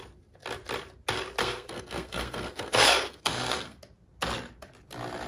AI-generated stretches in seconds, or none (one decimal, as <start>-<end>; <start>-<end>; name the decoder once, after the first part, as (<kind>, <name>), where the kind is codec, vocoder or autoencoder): 1.4-3.8 (codec, SNAC)